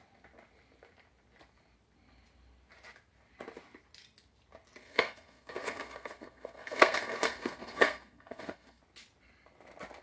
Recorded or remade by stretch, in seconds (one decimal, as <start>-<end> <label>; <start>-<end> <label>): 0.0-4.8 recorded; 4.8-8.8 remade; 8.8-10.0 recorded